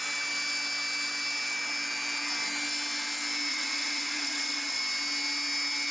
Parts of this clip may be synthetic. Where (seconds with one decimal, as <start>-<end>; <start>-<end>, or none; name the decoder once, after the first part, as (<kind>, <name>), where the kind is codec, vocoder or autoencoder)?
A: 3.5-4.8 (vocoder, WaveNeXt)